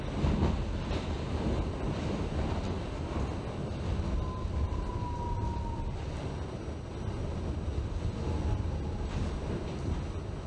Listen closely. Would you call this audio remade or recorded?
recorded